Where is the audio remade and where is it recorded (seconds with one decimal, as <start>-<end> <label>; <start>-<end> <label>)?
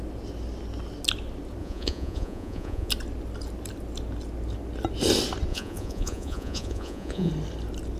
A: 0.0-1.6 recorded; 1.6-2.9 remade; 2.9-5.5 recorded; 5.5-7.3 remade; 7.3-8.0 recorded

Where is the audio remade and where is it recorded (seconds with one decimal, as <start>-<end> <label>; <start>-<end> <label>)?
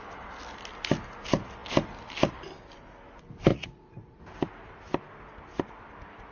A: 0.0-3.5 recorded; 3.5-4.2 remade; 4.2-6.3 recorded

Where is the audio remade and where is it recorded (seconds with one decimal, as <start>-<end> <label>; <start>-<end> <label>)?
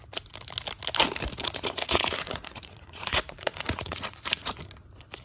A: 0.0-1.4 recorded; 1.4-4.5 remade; 4.5-5.2 recorded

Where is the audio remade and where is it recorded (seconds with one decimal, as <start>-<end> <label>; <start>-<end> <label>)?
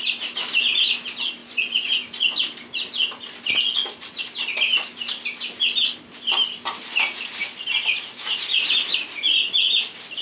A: 0.0-1.4 recorded; 1.4-2.2 remade; 2.2-10.2 recorded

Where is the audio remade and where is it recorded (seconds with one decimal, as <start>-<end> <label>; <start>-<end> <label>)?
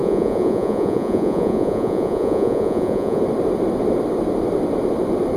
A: 0.0-3.2 remade; 3.2-5.4 recorded